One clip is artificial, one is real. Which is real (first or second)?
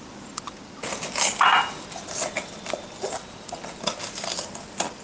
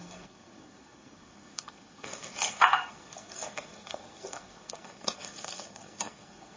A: first